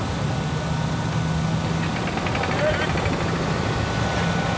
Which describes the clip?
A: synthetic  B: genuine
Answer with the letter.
B